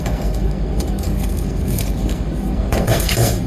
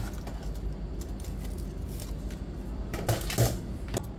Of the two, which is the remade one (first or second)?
first